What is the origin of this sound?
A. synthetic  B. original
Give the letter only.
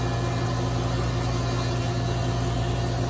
B